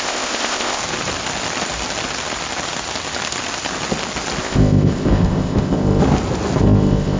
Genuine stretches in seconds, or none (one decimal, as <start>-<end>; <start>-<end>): 0.8-4.4; 6.0-6.6